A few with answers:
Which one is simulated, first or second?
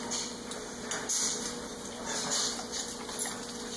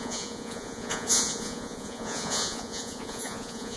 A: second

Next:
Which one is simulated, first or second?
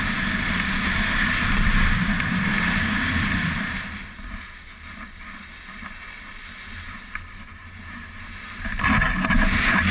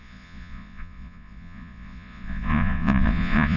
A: second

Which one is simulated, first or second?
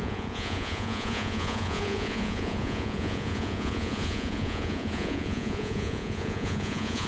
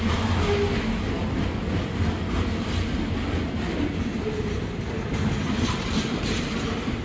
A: first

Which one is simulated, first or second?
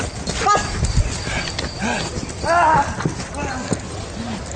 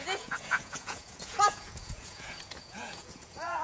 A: second